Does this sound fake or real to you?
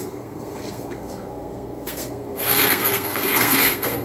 fake